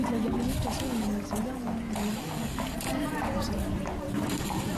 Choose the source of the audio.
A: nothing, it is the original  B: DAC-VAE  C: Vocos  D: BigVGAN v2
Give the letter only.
D